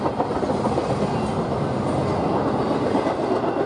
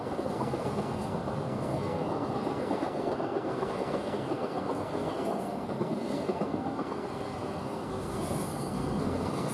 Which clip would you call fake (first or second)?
second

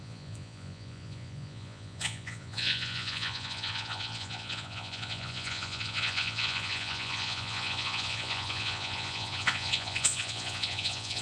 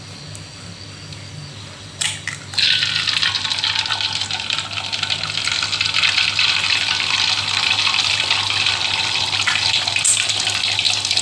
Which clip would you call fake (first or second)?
first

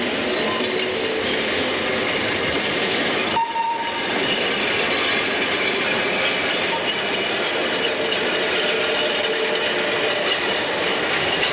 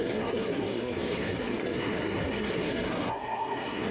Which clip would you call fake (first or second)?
second